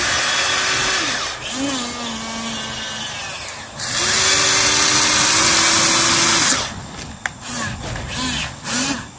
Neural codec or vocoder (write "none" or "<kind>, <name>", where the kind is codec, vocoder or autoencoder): none